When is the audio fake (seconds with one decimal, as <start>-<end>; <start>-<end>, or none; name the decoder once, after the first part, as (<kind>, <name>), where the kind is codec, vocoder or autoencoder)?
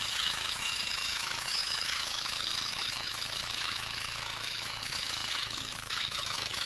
0.0-6.7 (autoencoder, DAC-VAE)